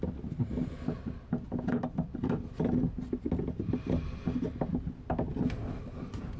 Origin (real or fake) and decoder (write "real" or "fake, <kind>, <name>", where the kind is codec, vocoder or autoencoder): real